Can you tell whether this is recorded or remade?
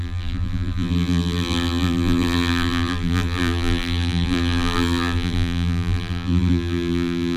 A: remade